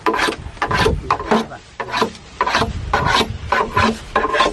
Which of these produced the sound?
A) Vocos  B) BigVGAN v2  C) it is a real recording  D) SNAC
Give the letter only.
C